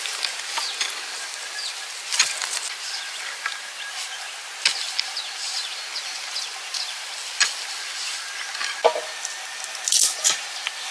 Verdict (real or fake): real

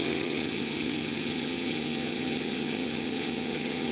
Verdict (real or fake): fake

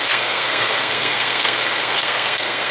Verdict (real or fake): fake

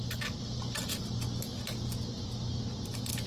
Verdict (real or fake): real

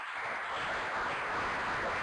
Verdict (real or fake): real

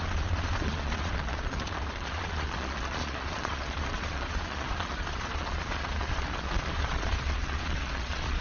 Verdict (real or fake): fake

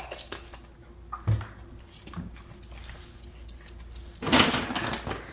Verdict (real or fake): real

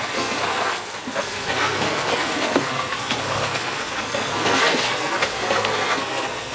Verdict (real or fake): fake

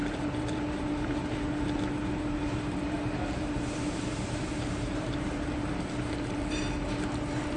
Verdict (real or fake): fake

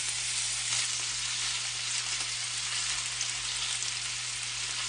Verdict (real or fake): real